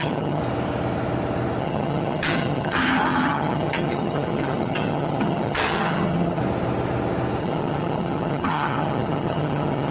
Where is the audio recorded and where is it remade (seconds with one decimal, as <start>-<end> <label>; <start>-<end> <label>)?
0.0-0.4 remade; 0.4-1.6 recorded; 1.6-6.4 remade; 6.4-7.4 recorded; 7.4-9.9 remade